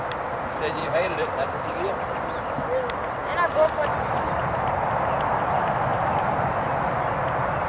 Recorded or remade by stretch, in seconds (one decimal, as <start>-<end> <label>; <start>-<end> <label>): 0.0-0.8 recorded; 0.8-1.9 remade; 1.9-3.9 recorded; 3.9-4.8 remade; 4.8-5.9 recorded; 5.9-6.5 remade; 6.5-7.7 recorded